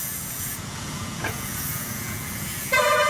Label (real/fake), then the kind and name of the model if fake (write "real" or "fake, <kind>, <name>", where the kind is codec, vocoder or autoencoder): fake, vocoder, Vocos